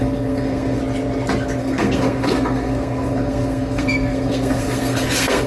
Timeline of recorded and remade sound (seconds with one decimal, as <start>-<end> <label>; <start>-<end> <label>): 0.0-0.8 remade; 0.8-1.6 recorded; 1.6-5.5 remade